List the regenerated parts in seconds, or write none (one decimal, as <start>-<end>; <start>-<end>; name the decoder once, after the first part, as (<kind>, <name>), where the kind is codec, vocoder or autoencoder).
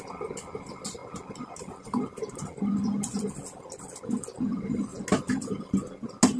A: none